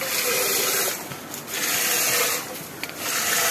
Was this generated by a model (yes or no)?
no